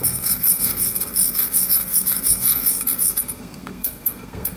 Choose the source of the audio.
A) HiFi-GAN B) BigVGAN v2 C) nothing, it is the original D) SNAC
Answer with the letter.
D